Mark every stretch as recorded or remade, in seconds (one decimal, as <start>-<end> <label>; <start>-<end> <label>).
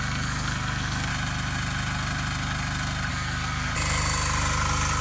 0.0-1.1 remade; 1.1-3.1 recorded; 3.1-3.7 remade; 3.7-5.0 recorded